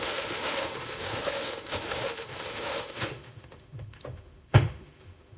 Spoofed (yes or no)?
yes